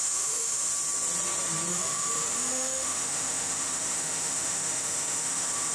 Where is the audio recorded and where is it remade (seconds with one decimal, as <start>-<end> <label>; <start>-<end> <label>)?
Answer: 0.0-0.7 remade; 0.7-1.7 recorded; 1.7-5.7 remade